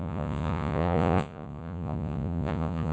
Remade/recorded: remade